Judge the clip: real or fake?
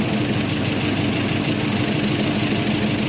real